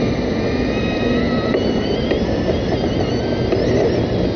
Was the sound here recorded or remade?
recorded